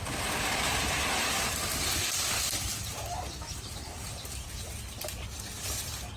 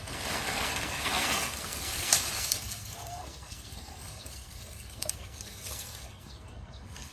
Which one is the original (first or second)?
first